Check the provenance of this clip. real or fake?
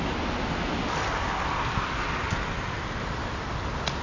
real